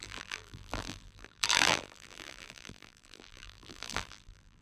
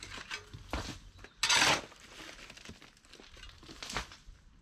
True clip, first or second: second